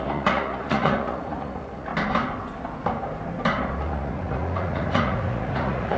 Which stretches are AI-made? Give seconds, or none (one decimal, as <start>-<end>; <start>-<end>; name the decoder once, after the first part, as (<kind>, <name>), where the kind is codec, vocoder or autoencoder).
0.0-1.9 (vocoder, Vocos); 3.8-6.0